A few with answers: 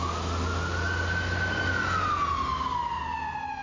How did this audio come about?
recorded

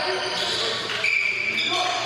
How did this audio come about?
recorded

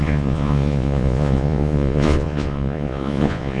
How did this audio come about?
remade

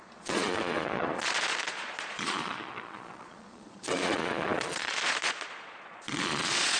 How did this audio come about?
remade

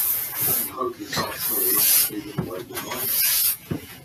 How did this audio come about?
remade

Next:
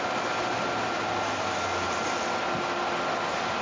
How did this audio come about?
recorded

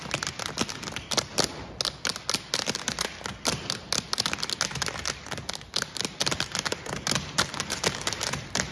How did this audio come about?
recorded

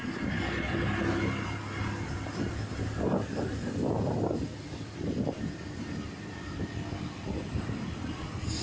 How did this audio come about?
recorded